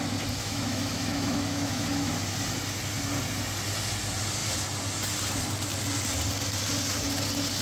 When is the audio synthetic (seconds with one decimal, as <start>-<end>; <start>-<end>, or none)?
0.4-2.1